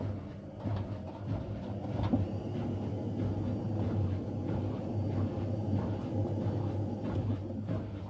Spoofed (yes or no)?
no